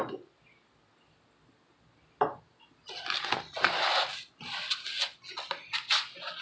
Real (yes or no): yes